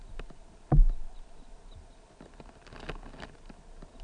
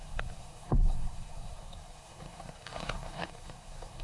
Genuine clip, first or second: first